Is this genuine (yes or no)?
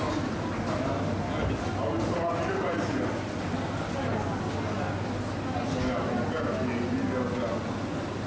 yes